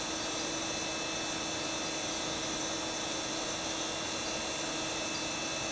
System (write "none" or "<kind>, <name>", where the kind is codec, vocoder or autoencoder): none